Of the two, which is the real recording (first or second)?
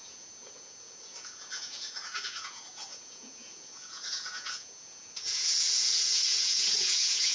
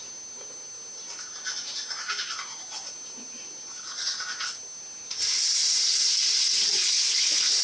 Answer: second